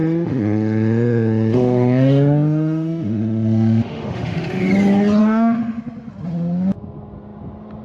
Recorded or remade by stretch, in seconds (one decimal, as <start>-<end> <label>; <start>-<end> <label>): 0.0-4.7 remade; 4.7-5.2 recorded; 5.2-5.8 remade; 5.8-7.8 recorded